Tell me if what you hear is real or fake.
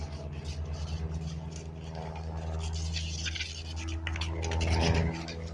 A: real